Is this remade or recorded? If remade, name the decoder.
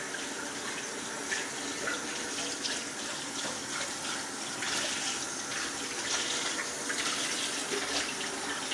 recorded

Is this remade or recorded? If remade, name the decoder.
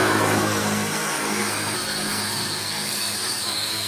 remade, codec, SNAC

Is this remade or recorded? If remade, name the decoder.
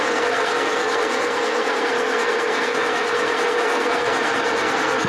remade, codec, SNAC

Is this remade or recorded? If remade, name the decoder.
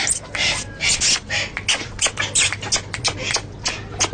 recorded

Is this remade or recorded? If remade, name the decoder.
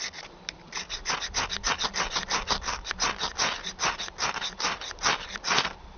recorded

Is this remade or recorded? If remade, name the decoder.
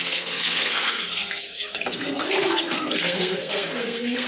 remade, codec, SNAC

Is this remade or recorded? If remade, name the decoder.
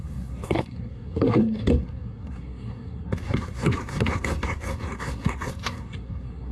remade, codec, SNAC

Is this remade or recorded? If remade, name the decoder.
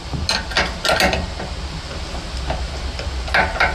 recorded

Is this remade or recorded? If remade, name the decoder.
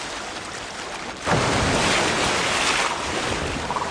recorded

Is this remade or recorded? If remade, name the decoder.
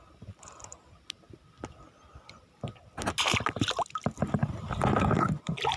recorded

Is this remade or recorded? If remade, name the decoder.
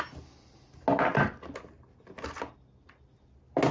recorded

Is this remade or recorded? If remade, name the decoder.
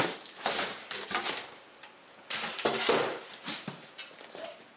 recorded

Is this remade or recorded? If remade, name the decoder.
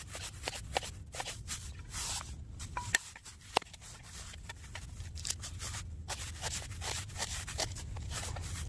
recorded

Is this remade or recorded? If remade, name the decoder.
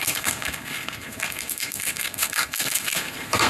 remade, codec, SNAC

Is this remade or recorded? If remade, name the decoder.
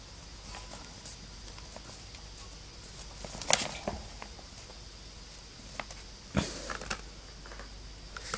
recorded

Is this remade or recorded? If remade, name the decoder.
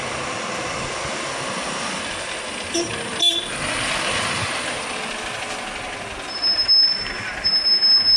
recorded